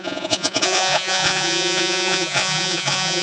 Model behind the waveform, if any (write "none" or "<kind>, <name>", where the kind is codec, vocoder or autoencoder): vocoder, Vocos